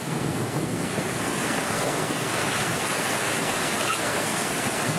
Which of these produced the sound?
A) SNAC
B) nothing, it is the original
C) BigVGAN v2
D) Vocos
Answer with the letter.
A